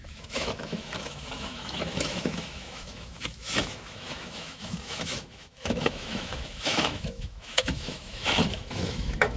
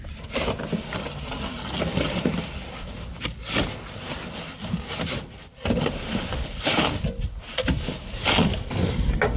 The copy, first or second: first